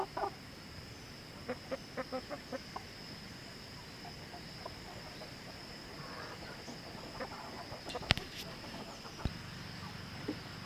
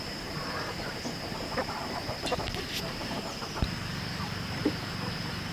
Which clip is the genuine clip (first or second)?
first